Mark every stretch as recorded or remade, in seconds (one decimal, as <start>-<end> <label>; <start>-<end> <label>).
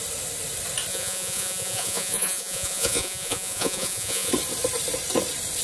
0.0-0.9 recorded; 0.9-4.3 remade; 4.3-5.6 recorded